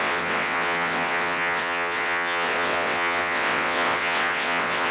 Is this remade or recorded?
remade